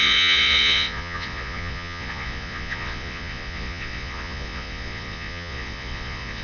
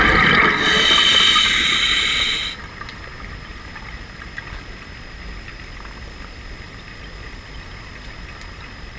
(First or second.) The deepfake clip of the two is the first